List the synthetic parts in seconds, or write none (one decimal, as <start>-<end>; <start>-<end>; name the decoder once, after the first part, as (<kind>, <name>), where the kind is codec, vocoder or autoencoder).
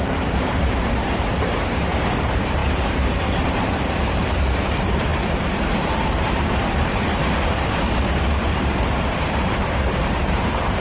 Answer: 0.0-5.1 (vocoder, BigVGAN v2); 5.7-7.2; 8.3-10.8